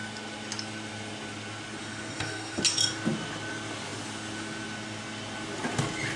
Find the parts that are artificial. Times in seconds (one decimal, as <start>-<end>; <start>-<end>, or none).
1.8-2.6